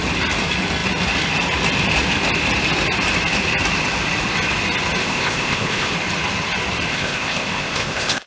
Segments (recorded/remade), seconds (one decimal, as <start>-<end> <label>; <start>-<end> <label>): 0.0-5.0 recorded; 5.0-5.9 remade; 5.9-6.9 recorded; 6.9-8.3 remade